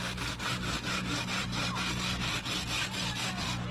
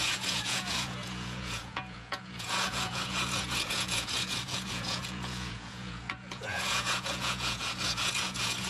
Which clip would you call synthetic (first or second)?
second